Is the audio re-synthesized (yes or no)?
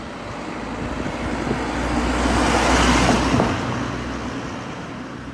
no